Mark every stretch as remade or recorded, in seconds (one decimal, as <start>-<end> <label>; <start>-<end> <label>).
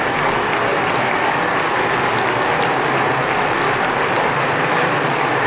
0.0-5.5 recorded